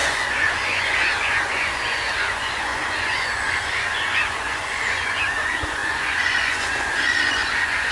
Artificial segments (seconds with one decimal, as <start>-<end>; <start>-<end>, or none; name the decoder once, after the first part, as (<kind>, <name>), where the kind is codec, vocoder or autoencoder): 0.0-7.9 (vocoder, Vocos)